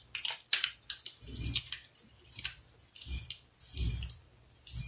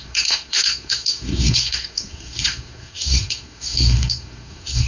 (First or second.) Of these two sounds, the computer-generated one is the second